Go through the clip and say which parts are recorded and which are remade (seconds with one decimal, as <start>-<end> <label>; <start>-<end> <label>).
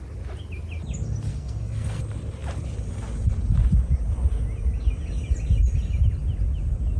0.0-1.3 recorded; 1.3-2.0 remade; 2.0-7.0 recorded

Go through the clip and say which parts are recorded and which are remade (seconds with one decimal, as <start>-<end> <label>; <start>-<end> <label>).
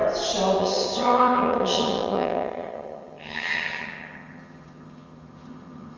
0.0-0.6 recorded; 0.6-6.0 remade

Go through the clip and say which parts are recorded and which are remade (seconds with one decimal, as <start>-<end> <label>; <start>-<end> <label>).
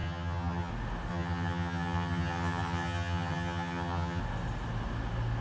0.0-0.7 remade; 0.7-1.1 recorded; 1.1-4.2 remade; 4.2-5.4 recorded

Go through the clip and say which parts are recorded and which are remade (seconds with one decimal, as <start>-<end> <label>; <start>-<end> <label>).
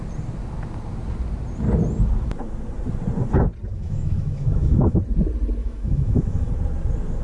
0.0-3.7 recorded; 3.7-5.0 remade; 5.0-5.6 recorded; 5.6-6.5 remade; 6.5-7.2 recorded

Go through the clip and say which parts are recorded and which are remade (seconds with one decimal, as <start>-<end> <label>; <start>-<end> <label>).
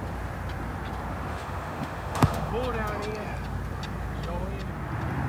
0.0-1.3 recorded; 1.3-2.5 remade; 2.5-5.3 recorded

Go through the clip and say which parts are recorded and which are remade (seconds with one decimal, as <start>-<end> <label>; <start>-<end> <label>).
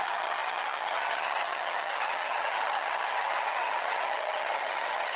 0.0-5.2 remade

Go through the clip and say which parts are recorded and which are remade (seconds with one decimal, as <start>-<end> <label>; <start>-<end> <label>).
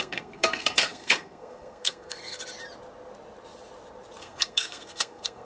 0.0-2.4 remade; 2.4-4.2 recorded; 4.2-5.4 remade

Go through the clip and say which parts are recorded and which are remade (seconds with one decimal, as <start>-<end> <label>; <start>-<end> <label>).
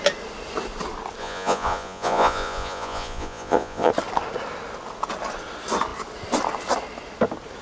0.0-1.2 recorded; 1.2-3.9 remade; 3.9-7.6 recorded